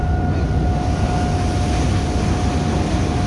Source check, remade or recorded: recorded